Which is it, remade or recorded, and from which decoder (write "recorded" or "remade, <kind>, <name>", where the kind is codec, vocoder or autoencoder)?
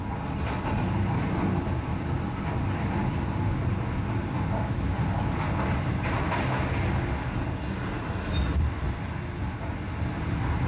recorded